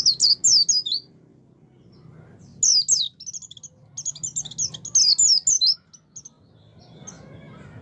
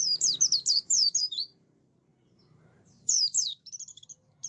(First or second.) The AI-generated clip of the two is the second